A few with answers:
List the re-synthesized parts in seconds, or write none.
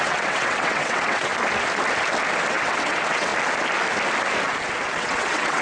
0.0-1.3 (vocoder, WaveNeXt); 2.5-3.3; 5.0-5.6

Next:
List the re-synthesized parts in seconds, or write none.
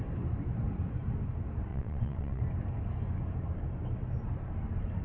1.7-2.4 (vocoder, WaveNeXt)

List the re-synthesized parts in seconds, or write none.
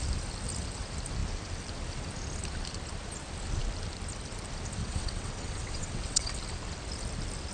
4.8-6.3 (vocoder, WaveNeXt)